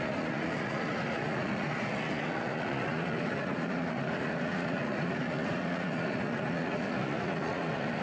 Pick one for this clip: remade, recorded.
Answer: remade